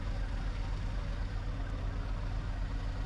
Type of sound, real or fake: real